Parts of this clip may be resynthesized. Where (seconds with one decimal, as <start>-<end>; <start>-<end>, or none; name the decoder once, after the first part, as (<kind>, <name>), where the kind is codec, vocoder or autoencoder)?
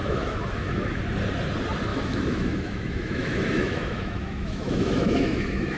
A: 0.0-1.0 (autoencoder, DAC-VAE); 1.9-5.8